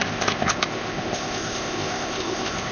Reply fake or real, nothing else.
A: fake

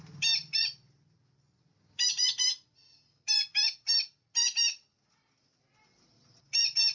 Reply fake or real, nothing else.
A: real